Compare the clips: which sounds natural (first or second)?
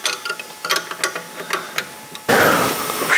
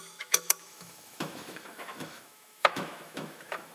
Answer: first